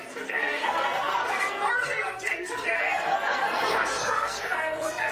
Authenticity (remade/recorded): remade